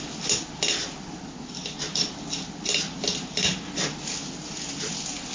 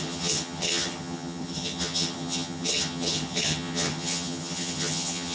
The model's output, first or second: second